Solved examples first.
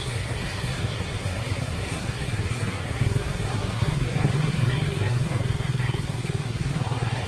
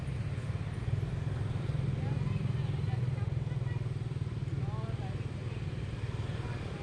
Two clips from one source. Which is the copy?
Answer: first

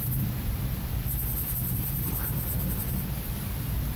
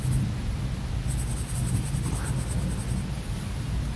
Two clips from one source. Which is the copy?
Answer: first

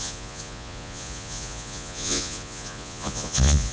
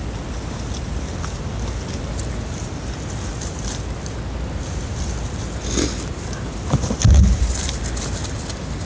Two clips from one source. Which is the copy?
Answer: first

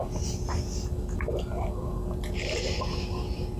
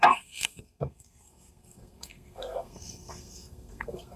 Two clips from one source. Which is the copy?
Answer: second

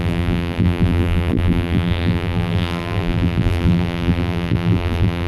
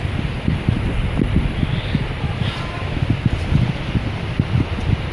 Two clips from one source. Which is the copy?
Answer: first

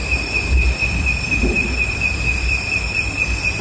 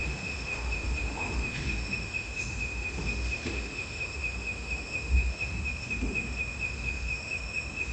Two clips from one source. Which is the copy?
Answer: second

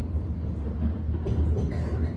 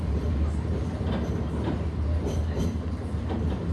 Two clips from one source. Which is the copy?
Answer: second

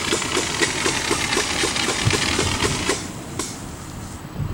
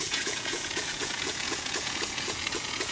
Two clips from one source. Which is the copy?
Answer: second